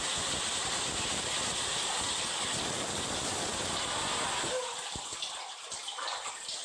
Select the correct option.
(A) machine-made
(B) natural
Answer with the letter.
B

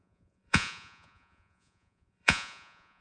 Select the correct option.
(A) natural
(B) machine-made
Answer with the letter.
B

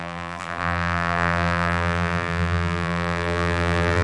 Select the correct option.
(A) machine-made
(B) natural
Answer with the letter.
A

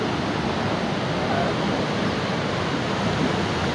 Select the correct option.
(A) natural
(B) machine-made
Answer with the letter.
A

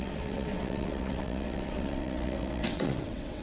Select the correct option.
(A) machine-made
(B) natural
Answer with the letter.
A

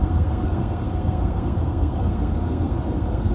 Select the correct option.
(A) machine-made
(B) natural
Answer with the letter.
A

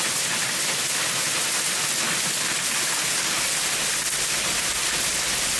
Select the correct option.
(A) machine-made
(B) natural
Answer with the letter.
B